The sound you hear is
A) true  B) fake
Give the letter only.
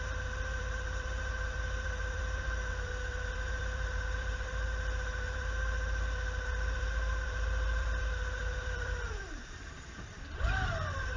B